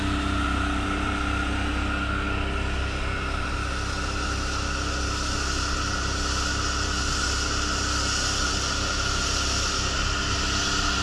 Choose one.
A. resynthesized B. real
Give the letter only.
B